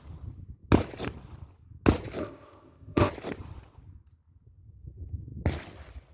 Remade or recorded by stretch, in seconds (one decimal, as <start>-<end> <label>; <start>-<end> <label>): 0.0-2.2 recorded; 2.2-3.1 remade; 3.1-6.1 recorded